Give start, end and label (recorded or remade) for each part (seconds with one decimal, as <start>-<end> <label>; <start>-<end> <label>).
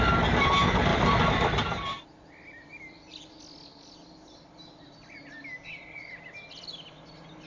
0.0-0.9 recorded; 0.9-3.4 remade; 3.4-7.5 recorded